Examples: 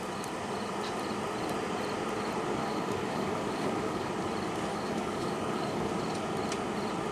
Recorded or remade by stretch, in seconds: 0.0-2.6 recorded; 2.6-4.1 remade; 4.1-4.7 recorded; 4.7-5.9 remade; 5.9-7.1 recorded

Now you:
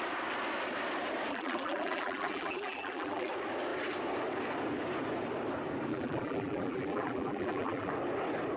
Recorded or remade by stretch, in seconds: 0.0-1.3 recorded; 1.3-3.3 remade; 3.3-5.9 recorded; 5.9-7.9 remade; 7.9-8.6 recorded